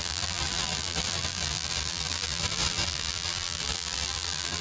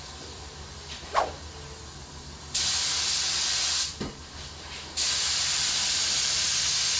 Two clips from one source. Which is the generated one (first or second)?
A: first